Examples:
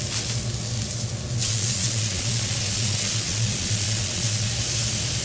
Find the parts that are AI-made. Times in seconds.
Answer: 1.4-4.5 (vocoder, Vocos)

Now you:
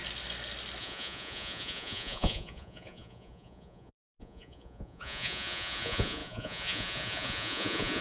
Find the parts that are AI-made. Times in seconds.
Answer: 0.8-8.0 (vocoder, Vocos)

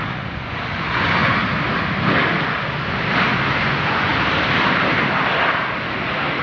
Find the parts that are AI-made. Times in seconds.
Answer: 0.0-1.4 (vocoder, Vocos); 3.6-4.1

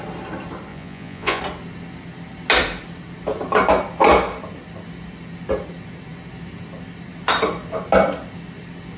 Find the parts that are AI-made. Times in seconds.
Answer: 0.7-1.4 (vocoder, Vocos)

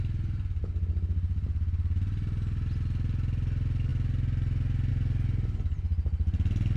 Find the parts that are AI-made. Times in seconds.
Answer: none

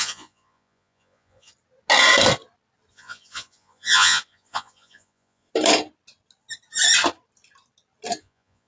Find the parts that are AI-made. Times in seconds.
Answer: 0.0-1.5 (vocoder, Vocos); 2.9-5.5; 8.2-8.7

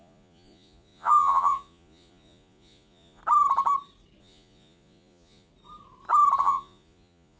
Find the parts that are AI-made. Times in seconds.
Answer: 0.0-3.2 (vocoder, Vocos); 4.2-5.5; 6.4-7.4